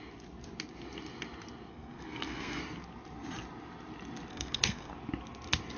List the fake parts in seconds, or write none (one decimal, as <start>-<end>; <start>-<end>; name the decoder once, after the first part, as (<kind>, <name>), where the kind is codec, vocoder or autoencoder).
1.7-2.6 (codec, SNAC); 4.3-4.9